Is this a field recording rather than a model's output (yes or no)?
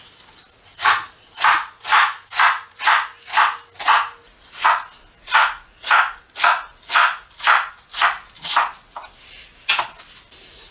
yes